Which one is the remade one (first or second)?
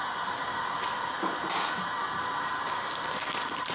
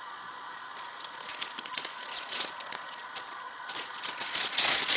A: second